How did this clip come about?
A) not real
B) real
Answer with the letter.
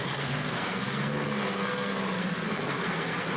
A